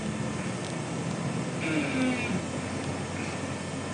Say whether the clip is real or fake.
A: real